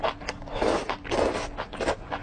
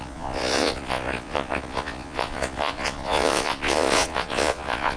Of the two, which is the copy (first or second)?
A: second